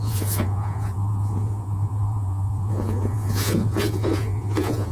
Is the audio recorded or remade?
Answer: remade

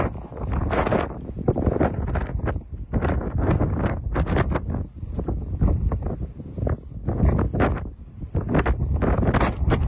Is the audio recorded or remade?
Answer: recorded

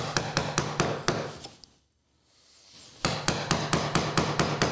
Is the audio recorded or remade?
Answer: recorded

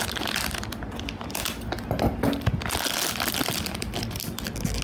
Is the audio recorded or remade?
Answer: recorded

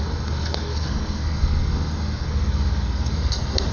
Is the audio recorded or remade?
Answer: remade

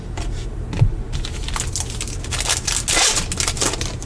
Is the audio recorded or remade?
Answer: recorded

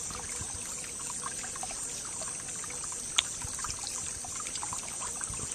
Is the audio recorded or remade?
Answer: recorded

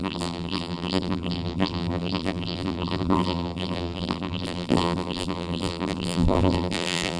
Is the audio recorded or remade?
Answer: remade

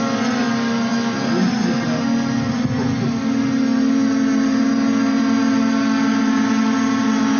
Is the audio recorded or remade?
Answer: recorded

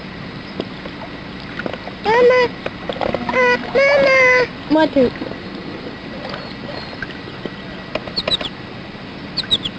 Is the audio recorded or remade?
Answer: recorded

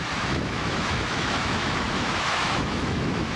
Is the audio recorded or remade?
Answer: remade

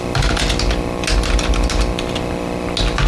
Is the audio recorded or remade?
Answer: recorded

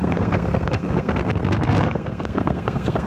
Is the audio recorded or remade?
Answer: remade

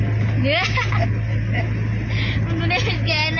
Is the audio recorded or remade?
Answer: recorded